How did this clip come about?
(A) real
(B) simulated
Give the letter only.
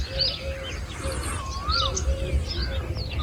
A